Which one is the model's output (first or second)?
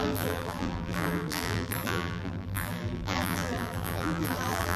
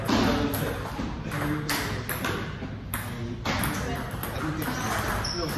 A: first